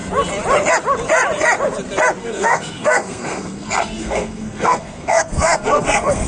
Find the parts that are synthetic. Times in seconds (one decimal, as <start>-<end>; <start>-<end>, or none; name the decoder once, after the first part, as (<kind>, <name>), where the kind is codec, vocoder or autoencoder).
2.2-6.3 (codec, SNAC)